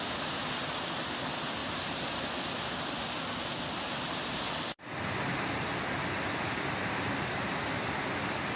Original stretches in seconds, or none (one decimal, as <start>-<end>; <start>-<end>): 0.0-8.6